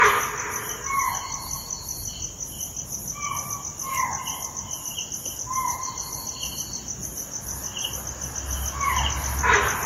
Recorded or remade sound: recorded